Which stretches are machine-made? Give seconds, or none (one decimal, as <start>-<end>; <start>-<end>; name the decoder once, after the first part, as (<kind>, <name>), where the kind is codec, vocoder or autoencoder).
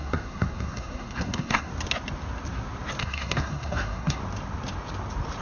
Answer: 0.0-1.7 (codec, SNAC); 3.0-4.2